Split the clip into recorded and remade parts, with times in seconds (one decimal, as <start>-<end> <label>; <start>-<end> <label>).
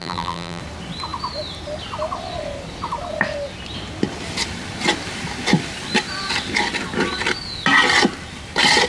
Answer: 0.0-0.6 remade; 0.6-8.9 recorded